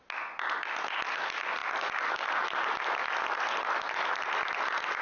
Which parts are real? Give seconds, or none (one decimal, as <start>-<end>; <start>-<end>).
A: 0.0-5.0